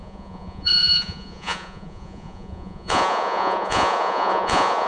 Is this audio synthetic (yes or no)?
yes